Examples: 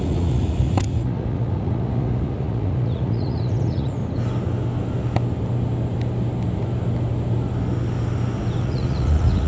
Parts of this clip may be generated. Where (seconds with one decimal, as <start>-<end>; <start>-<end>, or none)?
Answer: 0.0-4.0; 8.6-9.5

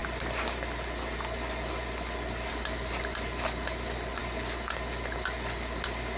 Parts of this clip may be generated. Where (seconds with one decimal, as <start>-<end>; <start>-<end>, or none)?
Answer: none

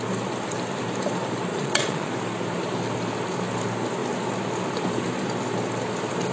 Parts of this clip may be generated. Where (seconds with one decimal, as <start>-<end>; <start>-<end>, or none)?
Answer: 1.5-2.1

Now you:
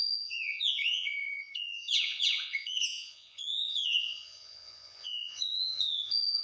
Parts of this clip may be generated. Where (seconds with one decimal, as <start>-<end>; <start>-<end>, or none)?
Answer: 0.0-6.4